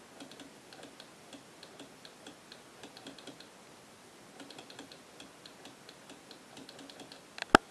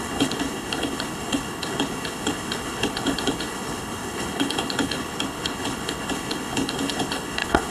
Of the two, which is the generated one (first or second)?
second